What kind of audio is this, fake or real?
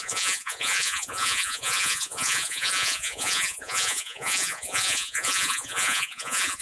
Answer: fake